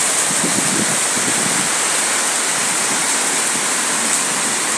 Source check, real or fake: real